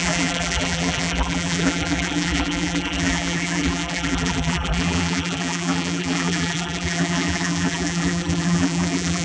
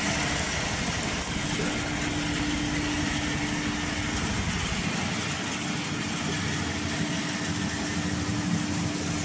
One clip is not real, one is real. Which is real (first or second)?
second